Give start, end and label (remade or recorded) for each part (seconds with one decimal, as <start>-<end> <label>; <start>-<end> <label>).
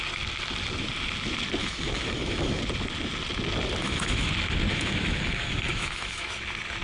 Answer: 0.0-1.6 recorded; 1.6-2.6 remade; 2.6-3.8 recorded; 3.8-4.3 remade; 4.3-4.7 recorded; 4.7-6.3 remade; 6.3-6.8 recorded